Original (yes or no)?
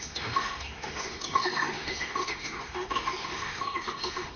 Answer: no